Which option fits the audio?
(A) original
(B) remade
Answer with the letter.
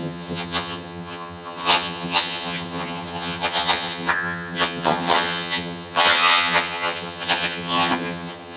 B